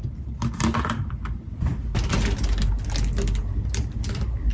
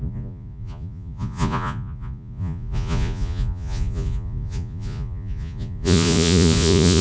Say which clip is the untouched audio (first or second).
first